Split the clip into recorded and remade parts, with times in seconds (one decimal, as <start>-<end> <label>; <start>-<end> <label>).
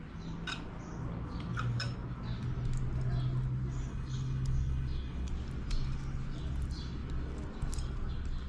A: 0.0-3.9 recorded; 3.9-5.3 remade; 5.3-8.5 recorded